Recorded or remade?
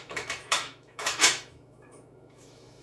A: remade